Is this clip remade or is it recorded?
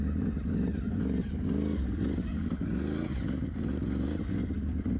remade